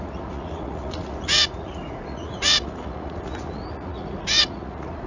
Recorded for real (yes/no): no